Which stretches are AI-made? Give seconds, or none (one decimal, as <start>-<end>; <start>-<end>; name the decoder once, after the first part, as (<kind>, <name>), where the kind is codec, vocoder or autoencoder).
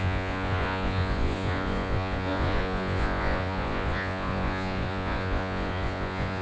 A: 0.0-6.4 (vocoder, Vocos)